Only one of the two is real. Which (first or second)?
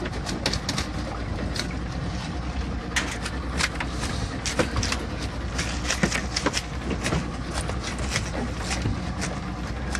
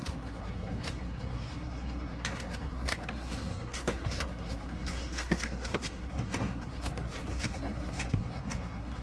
first